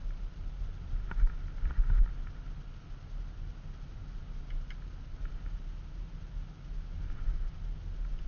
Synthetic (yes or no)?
no